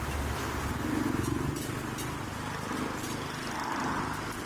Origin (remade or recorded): recorded